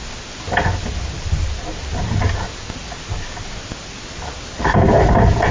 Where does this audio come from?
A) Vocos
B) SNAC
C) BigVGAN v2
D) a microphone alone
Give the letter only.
D